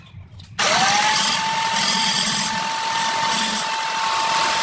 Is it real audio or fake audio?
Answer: real